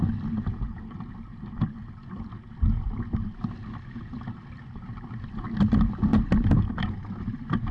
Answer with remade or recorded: recorded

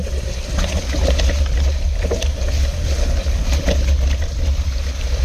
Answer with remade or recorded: recorded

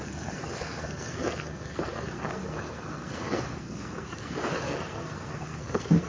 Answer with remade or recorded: remade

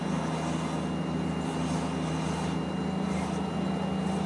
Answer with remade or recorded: recorded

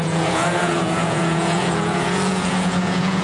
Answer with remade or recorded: remade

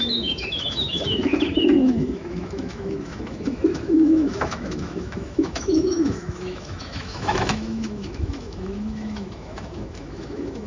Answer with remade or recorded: remade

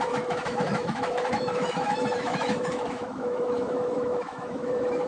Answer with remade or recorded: remade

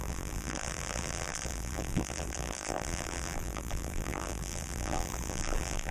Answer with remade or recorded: remade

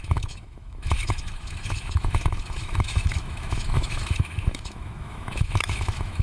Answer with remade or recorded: remade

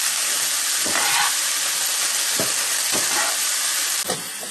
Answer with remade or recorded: recorded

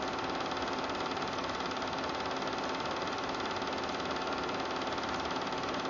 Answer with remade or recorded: recorded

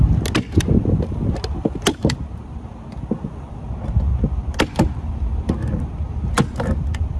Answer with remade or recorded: recorded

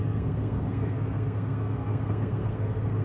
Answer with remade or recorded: remade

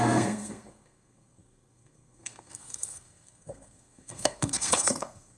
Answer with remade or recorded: remade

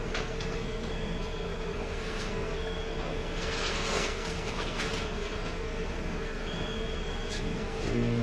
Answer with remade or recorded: remade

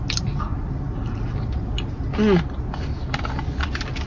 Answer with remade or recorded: recorded